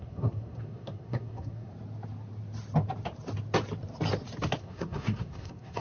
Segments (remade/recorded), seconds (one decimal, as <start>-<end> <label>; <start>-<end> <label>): 0.0-1.7 remade; 1.7-4.6 recorded; 4.6-5.8 remade